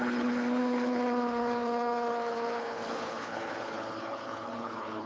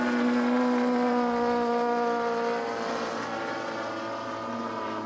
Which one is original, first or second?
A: second